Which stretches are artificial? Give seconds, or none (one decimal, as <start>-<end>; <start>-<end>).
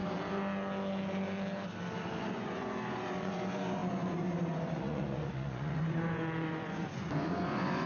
2.2-7.9